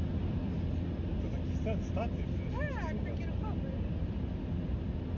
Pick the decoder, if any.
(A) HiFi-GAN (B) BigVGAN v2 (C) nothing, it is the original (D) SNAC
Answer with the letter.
C